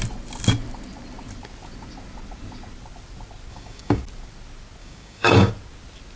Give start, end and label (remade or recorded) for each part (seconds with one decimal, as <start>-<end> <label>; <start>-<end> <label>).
0.0-3.5 recorded; 3.5-4.0 remade; 4.0-4.8 recorded; 4.8-5.5 remade; 5.5-6.2 recorded